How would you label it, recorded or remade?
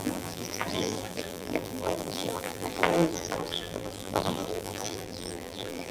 remade